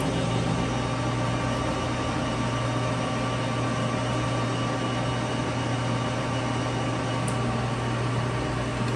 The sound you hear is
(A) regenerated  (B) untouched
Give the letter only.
B